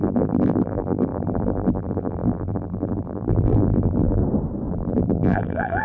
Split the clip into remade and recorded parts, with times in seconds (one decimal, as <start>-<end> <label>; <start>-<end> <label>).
0.0-4.2 remade; 4.2-4.7 recorded; 4.7-5.8 remade